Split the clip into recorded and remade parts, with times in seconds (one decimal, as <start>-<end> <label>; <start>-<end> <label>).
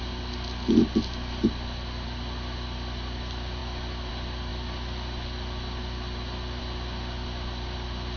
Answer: 0.0-8.2 recorded